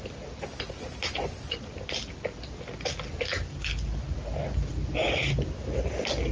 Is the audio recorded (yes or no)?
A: yes